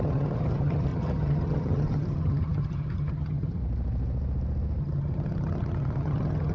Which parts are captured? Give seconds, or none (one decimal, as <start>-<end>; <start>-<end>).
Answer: 3.6-4.8

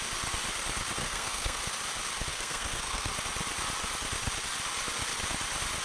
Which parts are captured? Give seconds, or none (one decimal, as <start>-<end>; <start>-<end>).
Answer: 0.0-1.0; 1.6-2.3; 3.1-5.8

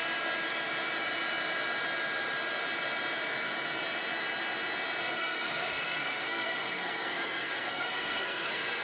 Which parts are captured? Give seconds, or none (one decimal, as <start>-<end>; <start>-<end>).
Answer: 0.0-5.0

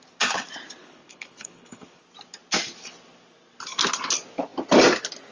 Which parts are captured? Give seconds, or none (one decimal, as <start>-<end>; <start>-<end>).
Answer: 0.0-0.8; 2.0-5.3

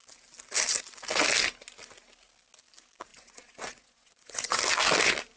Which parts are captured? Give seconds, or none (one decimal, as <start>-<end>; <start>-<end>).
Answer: 0.0-3.1; 4.6-5.4

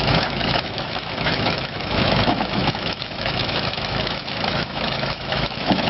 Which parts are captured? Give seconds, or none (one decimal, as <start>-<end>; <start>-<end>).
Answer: none

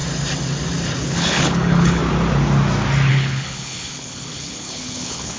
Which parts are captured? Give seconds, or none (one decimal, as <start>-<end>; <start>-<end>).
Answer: 0.0-1.0; 2.0-3.1

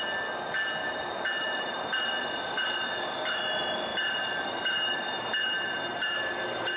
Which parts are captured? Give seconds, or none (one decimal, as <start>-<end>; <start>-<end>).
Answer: 0.0-0.8; 2.1-3.9; 6.2-6.8